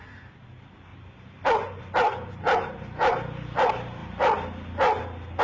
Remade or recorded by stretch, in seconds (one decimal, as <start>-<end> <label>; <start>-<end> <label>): 0.0-5.4 recorded